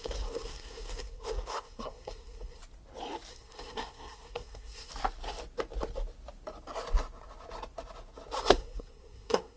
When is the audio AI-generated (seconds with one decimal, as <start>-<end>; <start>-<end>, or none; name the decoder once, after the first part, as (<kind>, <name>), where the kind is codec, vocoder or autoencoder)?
0.0-2.6 (codec, SNAC); 3.3-4.9; 8.4-9.6